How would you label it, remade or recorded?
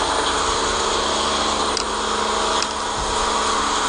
recorded